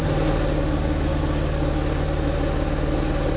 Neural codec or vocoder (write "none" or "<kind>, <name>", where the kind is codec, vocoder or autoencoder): none